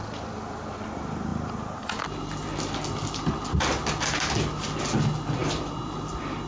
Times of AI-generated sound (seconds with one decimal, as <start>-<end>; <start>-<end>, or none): none